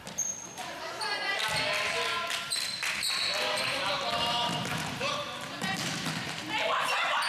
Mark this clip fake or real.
real